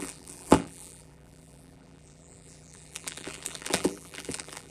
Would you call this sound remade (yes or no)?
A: yes